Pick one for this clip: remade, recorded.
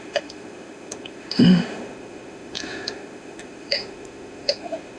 remade